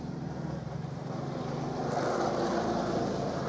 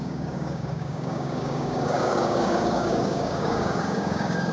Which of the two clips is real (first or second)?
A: first